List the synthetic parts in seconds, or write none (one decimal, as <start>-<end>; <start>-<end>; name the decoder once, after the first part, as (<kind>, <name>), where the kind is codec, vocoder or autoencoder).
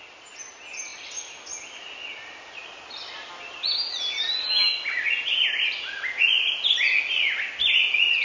none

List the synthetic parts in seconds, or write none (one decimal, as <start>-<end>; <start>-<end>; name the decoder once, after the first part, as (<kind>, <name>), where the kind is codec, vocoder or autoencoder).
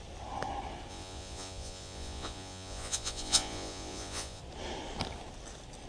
0.9-4.4 (vocoder, Vocos)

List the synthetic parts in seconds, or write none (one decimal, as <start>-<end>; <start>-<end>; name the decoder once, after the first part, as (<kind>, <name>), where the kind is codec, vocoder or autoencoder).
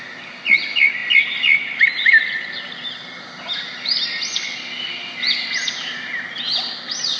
none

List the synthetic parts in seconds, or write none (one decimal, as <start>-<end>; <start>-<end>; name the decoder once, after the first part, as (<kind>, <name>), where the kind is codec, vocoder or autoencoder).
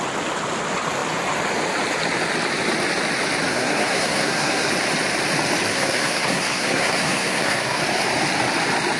3.5-4.7 (codec, SNAC); 5.7-7.8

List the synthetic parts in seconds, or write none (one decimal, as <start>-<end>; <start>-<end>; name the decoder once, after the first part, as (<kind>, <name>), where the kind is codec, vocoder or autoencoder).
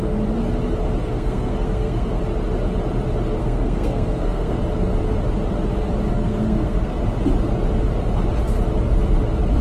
1.0-2.2 (codec, SNAC); 3.4-4.6; 6.1-6.9